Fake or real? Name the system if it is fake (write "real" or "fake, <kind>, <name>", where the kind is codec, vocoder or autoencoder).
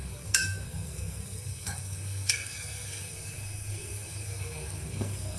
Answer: fake, codec, SNAC